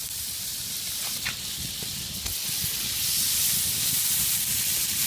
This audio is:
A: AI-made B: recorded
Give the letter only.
A